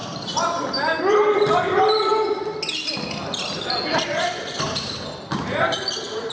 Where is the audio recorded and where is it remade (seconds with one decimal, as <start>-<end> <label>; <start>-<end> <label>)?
0.0-2.1 remade; 2.1-4.1 recorded; 4.1-6.3 remade